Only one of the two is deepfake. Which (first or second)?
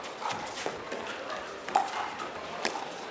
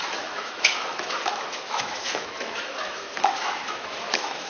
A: second